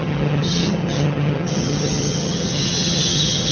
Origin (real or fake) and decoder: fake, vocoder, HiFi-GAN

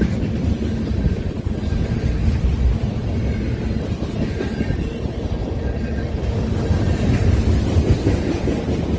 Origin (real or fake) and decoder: real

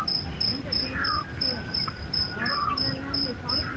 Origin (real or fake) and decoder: real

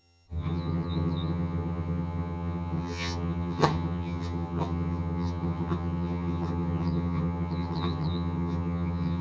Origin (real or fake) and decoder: fake, vocoder, HiFi-GAN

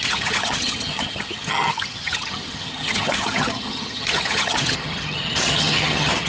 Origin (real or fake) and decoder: fake, vocoder, HiFi-GAN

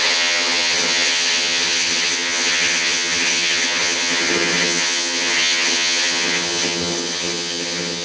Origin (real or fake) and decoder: fake, vocoder, HiFi-GAN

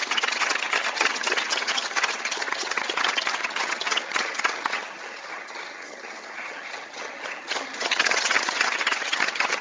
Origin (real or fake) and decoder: fake, vocoder, HiFi-GAN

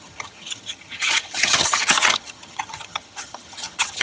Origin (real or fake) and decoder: fake, vocoder, HiFi-GAN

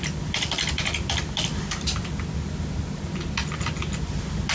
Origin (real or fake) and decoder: real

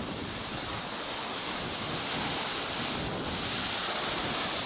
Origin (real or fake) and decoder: real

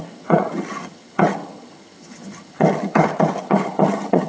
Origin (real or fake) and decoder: fake, vocoder, HiFi-GAN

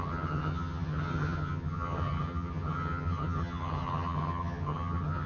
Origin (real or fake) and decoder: fake, vocoder, HiFi-GAN